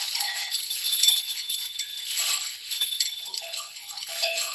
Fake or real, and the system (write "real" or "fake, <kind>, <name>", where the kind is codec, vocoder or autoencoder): fake, codec, HILCodec